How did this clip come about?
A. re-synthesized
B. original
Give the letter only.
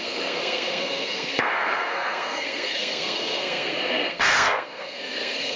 A